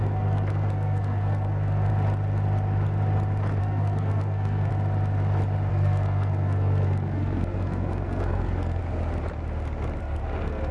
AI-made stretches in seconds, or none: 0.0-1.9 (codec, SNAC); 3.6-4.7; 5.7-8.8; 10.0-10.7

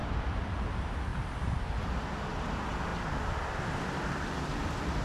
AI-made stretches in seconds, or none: 0.0-2.9 (vocoder, BigVGAN v2); 4.1-5.0

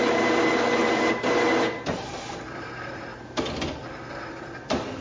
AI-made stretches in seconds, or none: 2.1-3.1 (vocoder, BigVGAN v2); 3.6-5.0